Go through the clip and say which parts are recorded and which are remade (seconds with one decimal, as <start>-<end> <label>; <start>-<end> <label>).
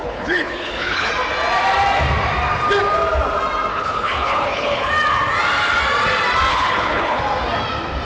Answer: 0.0-1.1 remade; 1.1-3.7 recorded; 3.7-4.9 remade; 4.9-6.5 recorded; 6.5-7.2 remade; 7.2-8.0 recorded